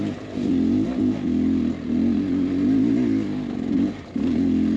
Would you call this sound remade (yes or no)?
no